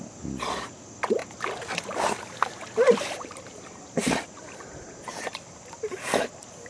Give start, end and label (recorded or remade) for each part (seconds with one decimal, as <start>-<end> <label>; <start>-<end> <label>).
0.0-6.7 recorded